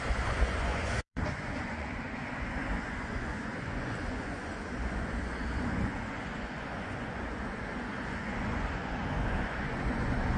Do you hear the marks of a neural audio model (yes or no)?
yes